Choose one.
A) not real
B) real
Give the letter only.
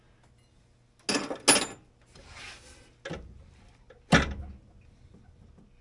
B